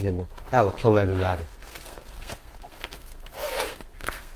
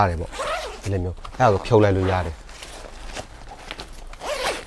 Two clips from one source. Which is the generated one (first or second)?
first